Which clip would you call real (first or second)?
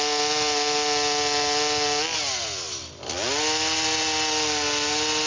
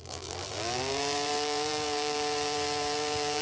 first